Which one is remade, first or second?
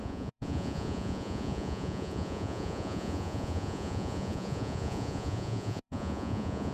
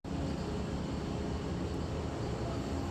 first